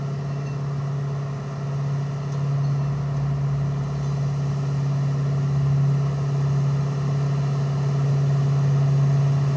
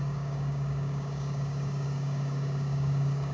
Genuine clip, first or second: first